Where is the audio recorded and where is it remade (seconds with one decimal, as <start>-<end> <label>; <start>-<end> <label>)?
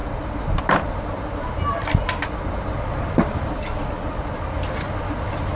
0.0-5.6 recorded